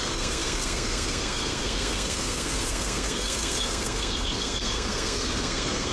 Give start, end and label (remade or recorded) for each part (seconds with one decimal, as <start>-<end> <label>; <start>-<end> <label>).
0.0-5.9 remade